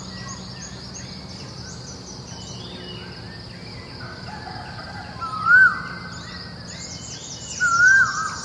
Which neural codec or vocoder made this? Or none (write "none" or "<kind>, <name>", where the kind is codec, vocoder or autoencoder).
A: none